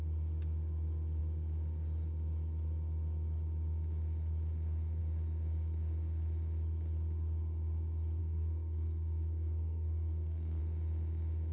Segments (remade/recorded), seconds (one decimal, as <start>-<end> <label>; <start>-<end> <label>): 0.0-8.2 recorded; 8.2-10.6 remade; 10.6-11.5 recorded